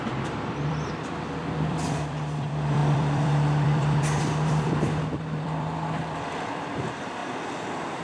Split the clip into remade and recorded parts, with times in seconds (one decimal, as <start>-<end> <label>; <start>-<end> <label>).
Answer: 0.0-8.0 remade